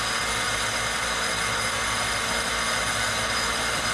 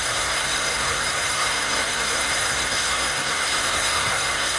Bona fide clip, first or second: first